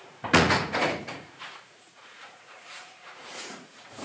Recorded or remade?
remade